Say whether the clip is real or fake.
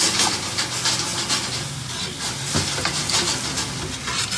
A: real